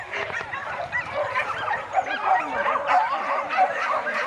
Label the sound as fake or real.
fake